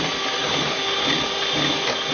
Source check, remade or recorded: recorded